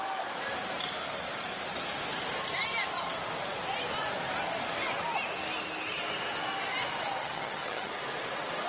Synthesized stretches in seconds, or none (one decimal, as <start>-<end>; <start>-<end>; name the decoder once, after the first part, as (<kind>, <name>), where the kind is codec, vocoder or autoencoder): 7.2-7.9 (vocoder, HiFi-GAN)